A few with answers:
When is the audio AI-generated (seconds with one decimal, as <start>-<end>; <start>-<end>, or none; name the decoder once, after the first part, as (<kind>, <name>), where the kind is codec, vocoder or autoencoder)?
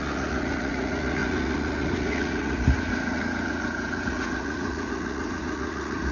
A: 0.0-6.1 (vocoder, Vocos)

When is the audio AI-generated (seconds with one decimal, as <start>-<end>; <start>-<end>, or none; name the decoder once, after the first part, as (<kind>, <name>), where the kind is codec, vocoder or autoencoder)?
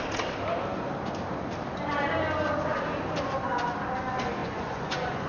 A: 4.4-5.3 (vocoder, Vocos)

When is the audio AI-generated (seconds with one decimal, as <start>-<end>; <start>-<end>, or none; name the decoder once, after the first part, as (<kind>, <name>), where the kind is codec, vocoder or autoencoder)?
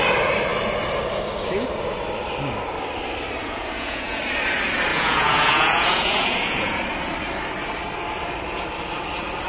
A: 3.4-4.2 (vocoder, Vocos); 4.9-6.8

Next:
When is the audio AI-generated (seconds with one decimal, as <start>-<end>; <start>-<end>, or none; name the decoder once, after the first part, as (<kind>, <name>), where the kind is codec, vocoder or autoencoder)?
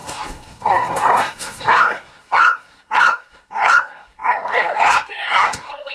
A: 0.0-5.9 (codec, SNAC)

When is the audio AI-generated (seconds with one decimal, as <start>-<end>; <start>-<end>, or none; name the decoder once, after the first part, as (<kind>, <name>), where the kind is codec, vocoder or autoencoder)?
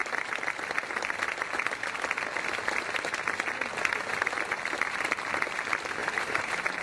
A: 6.0-6.8 (vocoder, BigVGAN v2)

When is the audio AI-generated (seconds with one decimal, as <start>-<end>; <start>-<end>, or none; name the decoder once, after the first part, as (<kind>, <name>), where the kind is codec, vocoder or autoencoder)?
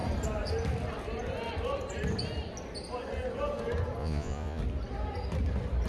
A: 4.0-4.6 (vocoder, Vocos)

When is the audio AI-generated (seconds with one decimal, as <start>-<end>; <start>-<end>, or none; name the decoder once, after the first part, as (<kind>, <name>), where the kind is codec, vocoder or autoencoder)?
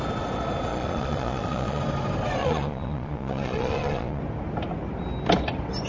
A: 0.7-1.8 (vocoder, Vocos); 2.4-4.2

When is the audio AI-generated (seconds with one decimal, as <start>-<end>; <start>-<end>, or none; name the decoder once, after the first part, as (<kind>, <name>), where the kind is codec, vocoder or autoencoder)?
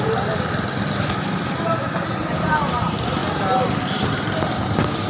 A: none